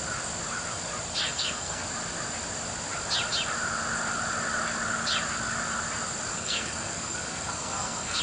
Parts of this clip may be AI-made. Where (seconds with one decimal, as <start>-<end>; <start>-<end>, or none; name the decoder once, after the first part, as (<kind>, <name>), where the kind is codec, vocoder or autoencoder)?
1.2-1.8 (codec, SNAC); 6.3-8.2